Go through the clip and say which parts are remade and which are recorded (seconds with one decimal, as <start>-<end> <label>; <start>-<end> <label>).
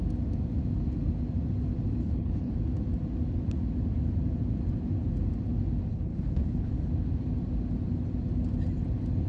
0.0-2.0 recorded; 2.0-2.5 remade; 2.5-5.9 recorded; 5.9-6.7 remade; 6.7-9.3 recorded